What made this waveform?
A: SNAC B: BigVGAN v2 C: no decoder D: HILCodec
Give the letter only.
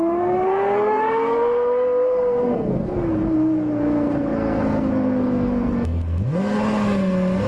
A